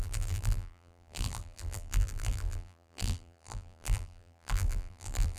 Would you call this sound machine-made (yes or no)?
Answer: yes